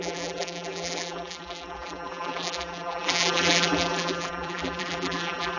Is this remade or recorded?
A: remade